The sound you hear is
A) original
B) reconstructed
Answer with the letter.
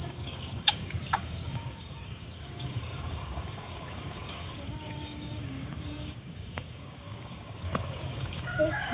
B